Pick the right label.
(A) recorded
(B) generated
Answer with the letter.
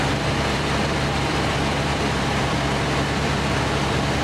B